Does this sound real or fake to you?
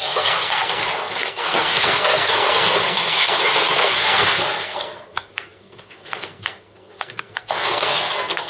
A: fake